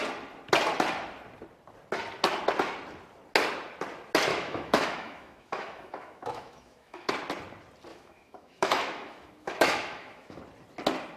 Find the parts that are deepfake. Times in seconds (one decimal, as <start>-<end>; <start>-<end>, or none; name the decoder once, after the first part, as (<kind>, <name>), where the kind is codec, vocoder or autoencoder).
4.3-7.1 (autoencoder, DAC-VAE); 7.9-10.4